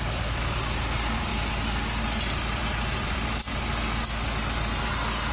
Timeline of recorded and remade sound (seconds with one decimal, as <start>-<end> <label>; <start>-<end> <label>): 0.0-1.3 remade; 1.3-2.4 recorded; 2.4-3.5 remade; 3.5-5.3 recorded